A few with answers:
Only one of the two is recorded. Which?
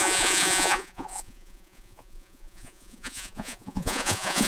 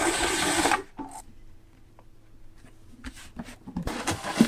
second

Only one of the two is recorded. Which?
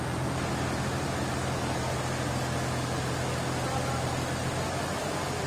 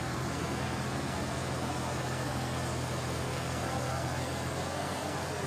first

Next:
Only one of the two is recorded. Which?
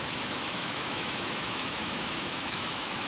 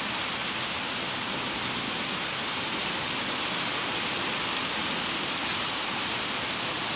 second